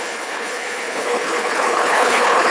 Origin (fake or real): fake